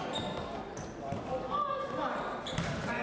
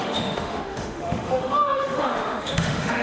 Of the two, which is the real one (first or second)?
first